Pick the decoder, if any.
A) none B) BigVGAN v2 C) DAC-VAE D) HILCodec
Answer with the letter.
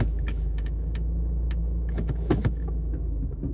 C